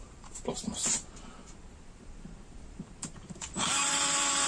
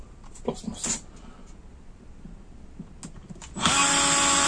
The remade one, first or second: first